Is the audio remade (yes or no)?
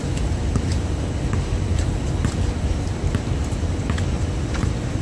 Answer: no